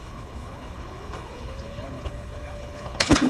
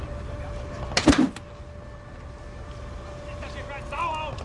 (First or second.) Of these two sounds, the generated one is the first